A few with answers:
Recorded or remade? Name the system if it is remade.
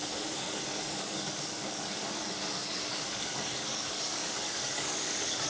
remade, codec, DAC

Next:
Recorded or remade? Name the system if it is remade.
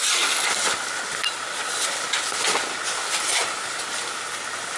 recorded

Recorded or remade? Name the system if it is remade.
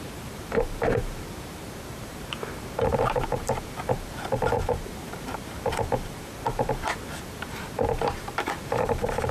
remade, vocoder, BigVGAN v2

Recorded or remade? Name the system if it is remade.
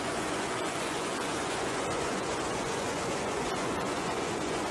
remade, vocoder, Vocos